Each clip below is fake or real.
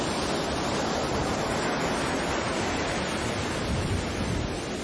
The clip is real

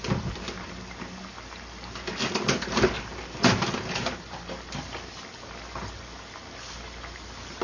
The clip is real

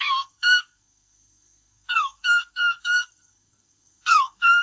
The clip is fake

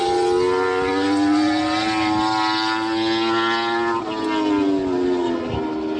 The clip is real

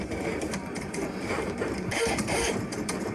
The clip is fake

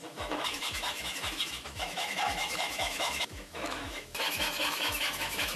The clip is fake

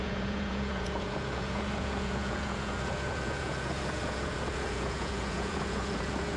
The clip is fake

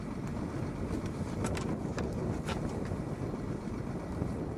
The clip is real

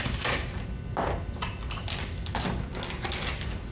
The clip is real